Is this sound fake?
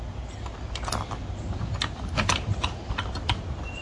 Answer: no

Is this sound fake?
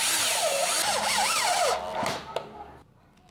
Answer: no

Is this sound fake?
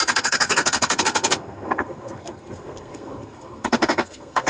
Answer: yes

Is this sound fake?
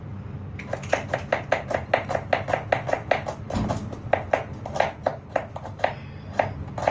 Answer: no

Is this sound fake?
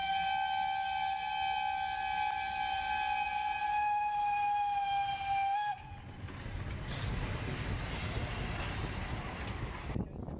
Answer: no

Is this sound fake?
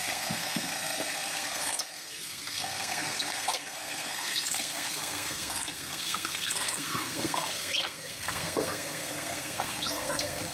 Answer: yes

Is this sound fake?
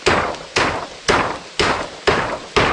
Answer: no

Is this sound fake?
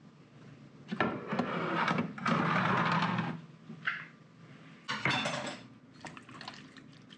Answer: no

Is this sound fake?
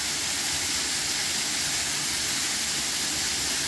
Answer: no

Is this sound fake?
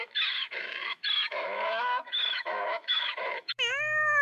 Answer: yes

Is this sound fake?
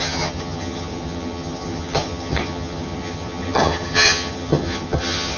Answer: yes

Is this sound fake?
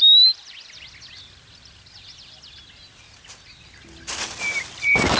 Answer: no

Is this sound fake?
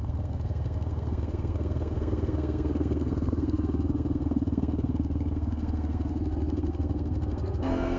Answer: yes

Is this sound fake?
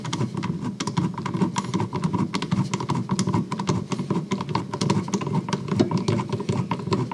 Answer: no